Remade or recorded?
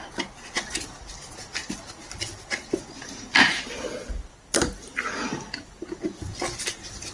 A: recorded